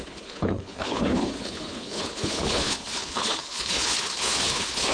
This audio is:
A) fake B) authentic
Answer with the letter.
A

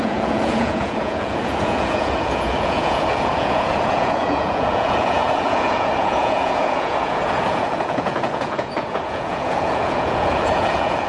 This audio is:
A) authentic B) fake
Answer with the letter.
B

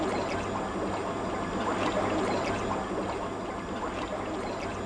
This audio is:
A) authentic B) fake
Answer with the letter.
A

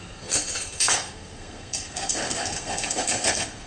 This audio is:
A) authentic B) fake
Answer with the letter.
B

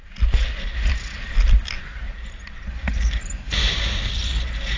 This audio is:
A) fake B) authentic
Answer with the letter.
B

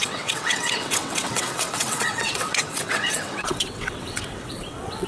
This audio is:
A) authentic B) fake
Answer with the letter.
B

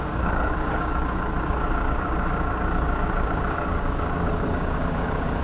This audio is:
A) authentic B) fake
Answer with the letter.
B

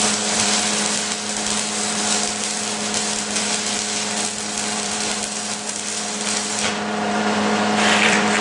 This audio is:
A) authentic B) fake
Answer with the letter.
B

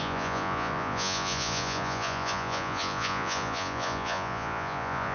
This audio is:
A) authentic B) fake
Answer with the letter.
B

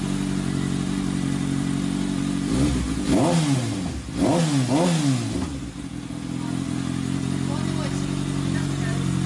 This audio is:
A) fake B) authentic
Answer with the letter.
B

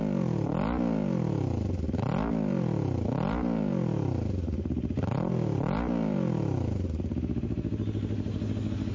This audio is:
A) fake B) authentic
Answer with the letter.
B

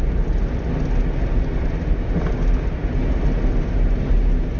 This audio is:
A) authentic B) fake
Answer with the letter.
A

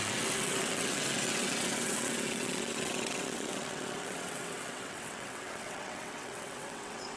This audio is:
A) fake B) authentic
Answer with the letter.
A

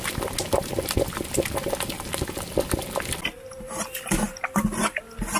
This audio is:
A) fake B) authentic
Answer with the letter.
B